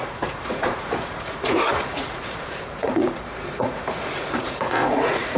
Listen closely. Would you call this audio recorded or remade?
remade